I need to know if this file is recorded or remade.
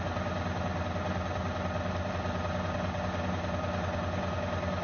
recorded